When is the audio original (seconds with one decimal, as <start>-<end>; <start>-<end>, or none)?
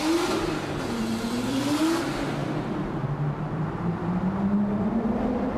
0.0-1.1; 1.8-2.4; 4.0-5.6